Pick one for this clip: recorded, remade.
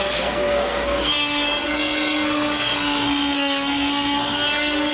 remade